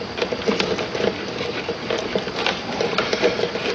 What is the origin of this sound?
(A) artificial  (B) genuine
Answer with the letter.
B